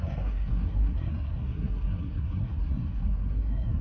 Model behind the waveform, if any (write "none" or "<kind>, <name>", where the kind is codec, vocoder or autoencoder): codec, SNAC